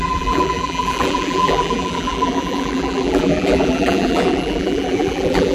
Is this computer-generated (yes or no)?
yes